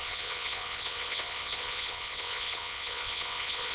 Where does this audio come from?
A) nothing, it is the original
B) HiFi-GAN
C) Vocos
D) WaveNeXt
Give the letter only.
D